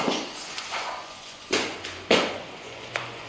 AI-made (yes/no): yes